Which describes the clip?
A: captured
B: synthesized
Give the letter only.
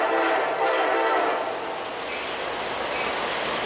A